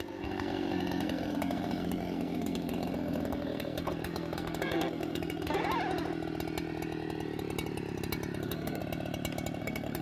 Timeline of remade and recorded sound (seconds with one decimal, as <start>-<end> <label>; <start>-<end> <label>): 0.0-5.6 remade; 5.6-8.4 recorded; 8.4-8.8 remade; 8.8-9.6 recorded; 9.6-10.0 remade